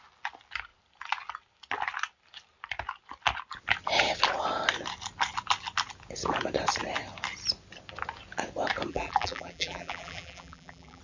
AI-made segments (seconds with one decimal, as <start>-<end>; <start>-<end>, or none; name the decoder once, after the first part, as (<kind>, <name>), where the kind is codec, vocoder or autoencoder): 8.9-11.0 (vocoder, BigVGAN v2)